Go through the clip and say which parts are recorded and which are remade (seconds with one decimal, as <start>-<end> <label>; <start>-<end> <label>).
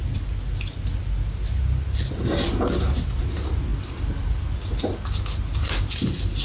0.0-6.4 recorded